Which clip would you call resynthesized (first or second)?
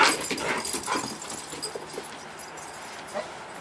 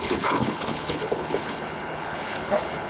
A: second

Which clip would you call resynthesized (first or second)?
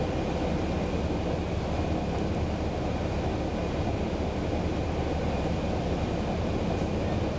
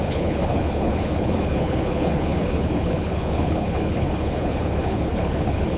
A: second